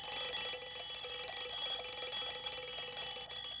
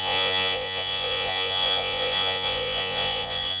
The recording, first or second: first